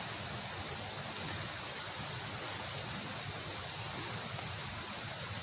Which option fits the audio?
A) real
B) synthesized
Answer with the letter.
A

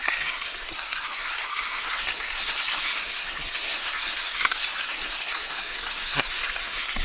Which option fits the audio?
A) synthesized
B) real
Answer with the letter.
A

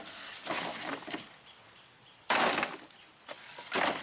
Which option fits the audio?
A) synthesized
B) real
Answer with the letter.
B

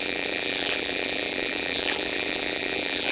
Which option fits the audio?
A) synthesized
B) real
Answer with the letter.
A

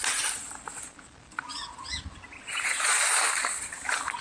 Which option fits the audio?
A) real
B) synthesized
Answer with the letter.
A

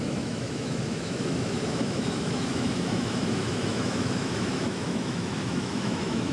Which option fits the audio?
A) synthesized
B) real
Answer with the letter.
A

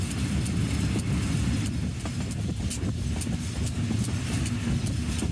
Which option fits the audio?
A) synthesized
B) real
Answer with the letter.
B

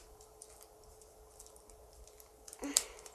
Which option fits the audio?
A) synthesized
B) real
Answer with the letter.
A